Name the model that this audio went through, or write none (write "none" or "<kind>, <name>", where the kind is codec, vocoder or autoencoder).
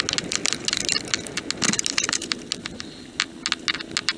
none